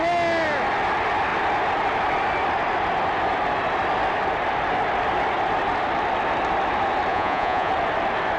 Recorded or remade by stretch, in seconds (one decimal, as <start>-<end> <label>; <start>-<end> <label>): 0.0-7.1 recorded; 7.1-7.7 remade; 7.7-8.4 recorded